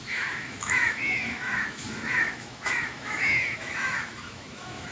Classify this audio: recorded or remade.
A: remade